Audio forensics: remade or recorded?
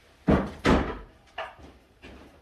remade